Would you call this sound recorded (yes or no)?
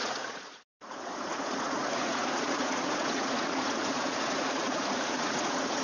no